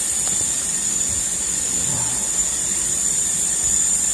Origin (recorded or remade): recorded